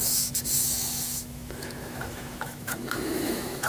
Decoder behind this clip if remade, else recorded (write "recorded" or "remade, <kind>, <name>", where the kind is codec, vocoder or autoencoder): remade, autoencoder, DAC-VAE